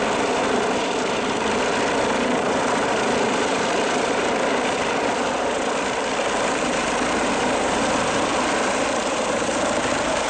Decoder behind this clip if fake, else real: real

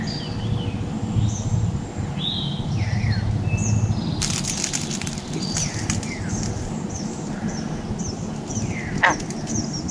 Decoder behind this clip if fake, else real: real